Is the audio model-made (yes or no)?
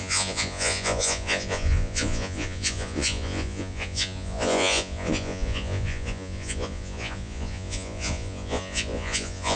yes